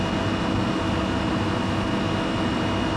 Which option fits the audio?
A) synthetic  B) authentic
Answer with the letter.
B